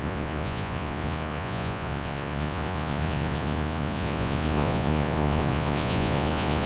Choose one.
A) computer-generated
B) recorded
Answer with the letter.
A